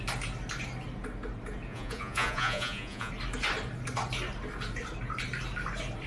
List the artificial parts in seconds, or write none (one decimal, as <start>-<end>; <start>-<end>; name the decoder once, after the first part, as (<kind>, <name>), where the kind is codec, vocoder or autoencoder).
1.7-3.1 (vocoder, Vocos)